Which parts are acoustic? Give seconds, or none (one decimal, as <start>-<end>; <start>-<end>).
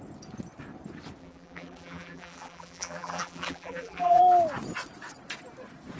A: 0.0-1.2; 4.2-6.0